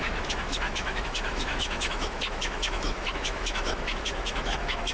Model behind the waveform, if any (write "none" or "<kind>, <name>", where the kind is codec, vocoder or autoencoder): autoencoder, DAC-VAE